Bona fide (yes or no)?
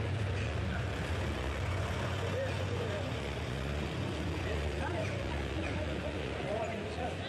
no